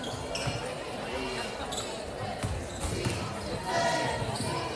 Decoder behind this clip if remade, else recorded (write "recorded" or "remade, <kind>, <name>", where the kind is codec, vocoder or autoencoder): recorded